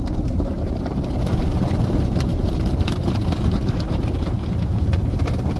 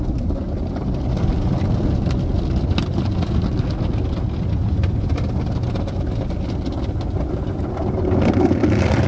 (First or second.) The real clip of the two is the second